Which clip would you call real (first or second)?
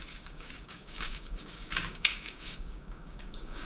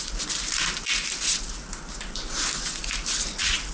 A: second